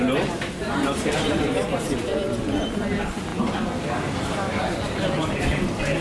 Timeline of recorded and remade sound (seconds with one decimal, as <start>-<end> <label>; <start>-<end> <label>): 0.0-0.6 recorded; 0.6-1.6 remade; 1.6-6.0 recorded